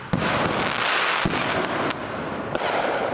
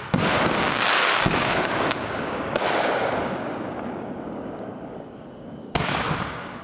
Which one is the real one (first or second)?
first